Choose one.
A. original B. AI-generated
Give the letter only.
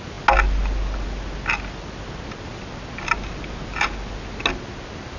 A